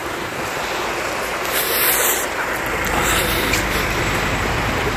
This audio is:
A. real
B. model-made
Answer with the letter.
A